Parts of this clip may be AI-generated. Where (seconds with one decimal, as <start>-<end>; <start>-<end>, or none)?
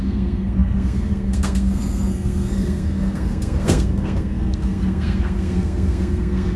0.0-6.6